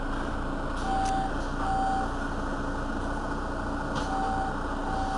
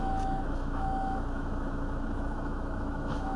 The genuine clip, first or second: first